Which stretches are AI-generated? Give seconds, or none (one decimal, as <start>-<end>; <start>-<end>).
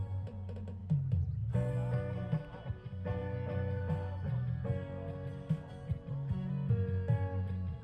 none